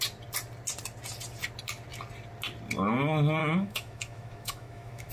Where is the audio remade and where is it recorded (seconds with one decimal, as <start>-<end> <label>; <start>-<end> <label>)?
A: 0.0-3.4 recorded; 3.4-5.1 remade